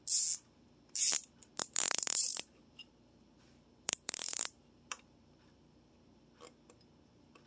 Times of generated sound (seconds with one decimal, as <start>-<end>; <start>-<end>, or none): 1.6-5.9